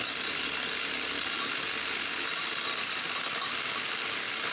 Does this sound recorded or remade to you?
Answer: recorded